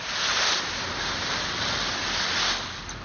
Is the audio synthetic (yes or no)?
no